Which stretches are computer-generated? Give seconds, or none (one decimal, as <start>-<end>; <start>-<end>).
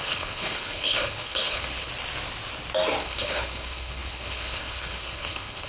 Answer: 0.0-1.9; 3.0-5.7